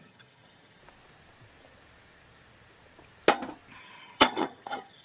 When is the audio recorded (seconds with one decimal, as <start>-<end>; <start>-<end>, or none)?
0.8-3.8